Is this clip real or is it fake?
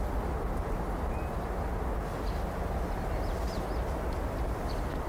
real